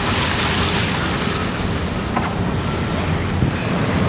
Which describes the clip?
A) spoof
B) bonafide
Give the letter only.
B